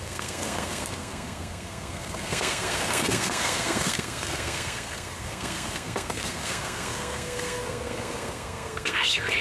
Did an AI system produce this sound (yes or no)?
yes